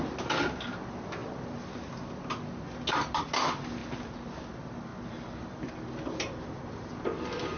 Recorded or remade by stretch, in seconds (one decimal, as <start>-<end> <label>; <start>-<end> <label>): 0.0-7.6 recorded